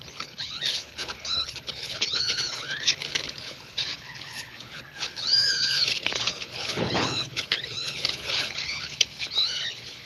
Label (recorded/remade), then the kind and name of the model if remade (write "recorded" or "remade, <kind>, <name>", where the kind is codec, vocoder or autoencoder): remade, codec, HILCodec